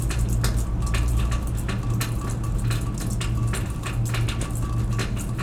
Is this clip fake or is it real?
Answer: real